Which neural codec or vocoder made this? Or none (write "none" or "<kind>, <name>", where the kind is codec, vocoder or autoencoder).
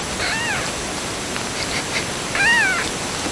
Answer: none